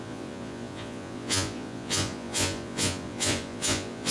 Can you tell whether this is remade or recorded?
remade